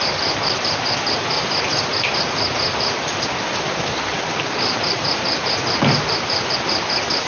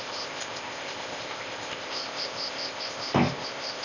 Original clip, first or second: first